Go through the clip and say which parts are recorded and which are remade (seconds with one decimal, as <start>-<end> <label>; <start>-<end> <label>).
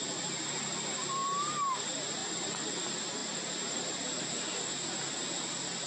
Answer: 0.0-1.2 recorded; 1.2-1.8 remade; 1.8-3.2 recorded; 3.2-4.2 remade; 4.2-5.9 recorded